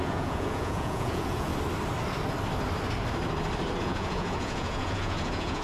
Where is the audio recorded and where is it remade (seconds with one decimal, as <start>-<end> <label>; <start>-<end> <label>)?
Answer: 0.0-1.5 remade; 1.5-3.8 recorded; 3.8-5.6 remade